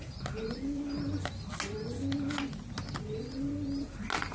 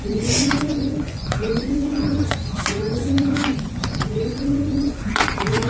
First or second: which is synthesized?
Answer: second